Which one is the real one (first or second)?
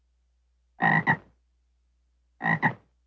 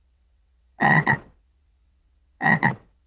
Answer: first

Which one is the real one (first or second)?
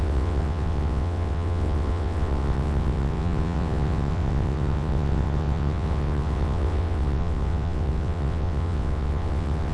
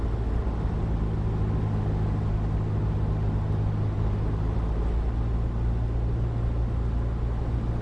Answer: second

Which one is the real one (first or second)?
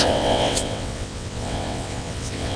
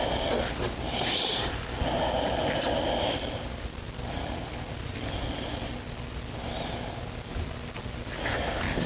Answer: second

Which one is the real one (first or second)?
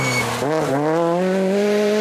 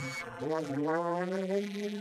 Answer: first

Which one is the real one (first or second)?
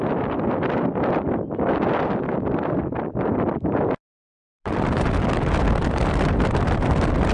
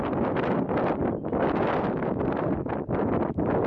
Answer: second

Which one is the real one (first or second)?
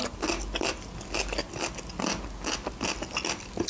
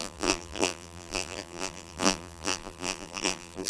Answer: first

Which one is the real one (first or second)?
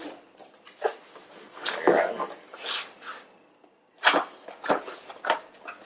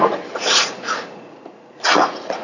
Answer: first